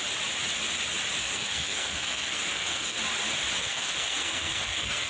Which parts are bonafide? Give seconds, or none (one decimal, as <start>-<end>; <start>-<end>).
0.0-1.2; 3.0-3.6